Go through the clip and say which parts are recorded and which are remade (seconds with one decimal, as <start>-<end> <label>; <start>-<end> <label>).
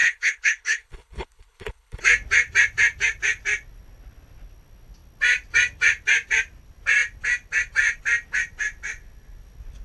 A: 0.0-2.0 remade; 2.0-9.8 recorded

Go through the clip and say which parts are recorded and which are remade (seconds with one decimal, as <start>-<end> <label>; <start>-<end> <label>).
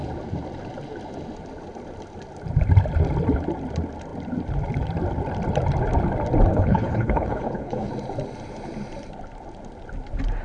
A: 0.0-6.5 recorded; 6.5-7.9 remade; 7.9-10.4 recorded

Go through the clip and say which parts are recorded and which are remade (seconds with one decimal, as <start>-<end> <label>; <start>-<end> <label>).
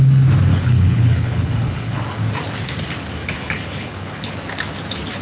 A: 0.0-0.5 recorded; 0.5-2.0 remade; 2.0-3.2 recorded; 3.2-4.3 remade; 4.3-5.2 recorded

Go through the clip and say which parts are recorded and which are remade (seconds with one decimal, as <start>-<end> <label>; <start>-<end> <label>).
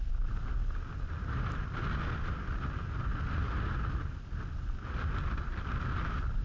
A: 0.0-6.4 recorded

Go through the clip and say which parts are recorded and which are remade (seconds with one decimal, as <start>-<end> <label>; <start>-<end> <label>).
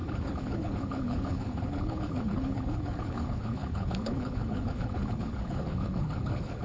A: 0.0-6.6 remade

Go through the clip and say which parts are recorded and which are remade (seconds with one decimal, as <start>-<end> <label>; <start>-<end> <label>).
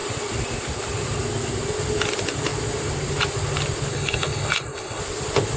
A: 0.0-3.9 recorded; 3.9-5.0 remade; 5.0-5.6 recorded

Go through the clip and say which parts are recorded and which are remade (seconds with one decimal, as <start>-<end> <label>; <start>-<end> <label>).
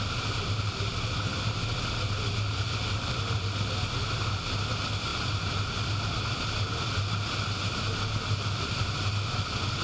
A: 0.0-9.8 recorded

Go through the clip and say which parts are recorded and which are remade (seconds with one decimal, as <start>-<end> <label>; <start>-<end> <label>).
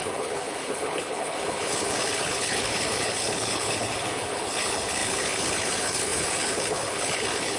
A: 0.0-7.6 remade